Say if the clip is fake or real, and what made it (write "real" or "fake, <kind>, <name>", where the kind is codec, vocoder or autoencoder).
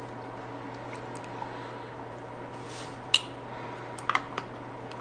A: real